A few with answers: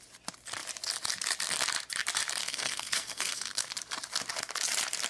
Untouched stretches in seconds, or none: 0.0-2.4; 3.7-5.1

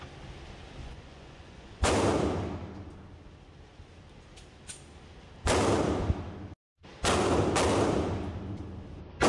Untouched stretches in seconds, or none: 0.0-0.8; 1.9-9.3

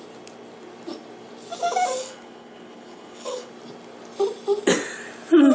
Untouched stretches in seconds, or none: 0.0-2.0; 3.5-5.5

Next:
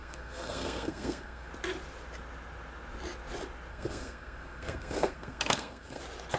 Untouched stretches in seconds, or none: 1.5-3.7; 6.0-6.4

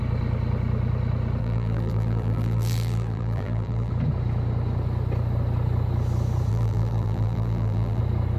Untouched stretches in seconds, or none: 0.0-1.4; 3.9-6.5; 8.0-8.4